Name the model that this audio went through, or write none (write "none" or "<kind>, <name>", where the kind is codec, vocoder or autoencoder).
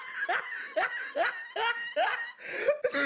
none